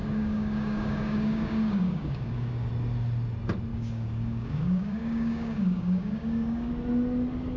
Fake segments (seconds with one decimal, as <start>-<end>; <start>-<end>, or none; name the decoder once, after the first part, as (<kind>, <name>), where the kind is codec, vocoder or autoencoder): 0.0-2.7 (codec, DAC); 3.7-6.7